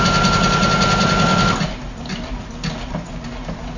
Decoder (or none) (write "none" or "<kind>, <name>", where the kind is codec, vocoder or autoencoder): none